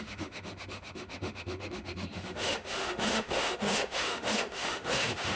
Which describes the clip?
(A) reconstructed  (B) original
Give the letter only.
A